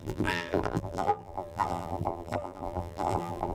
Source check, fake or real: fake